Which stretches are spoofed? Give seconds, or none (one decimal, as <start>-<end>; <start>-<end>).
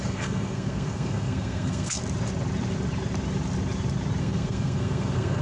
0.0-2.0; 4.2-5.4